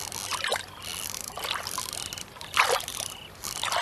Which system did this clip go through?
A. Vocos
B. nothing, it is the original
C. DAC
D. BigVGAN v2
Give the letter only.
B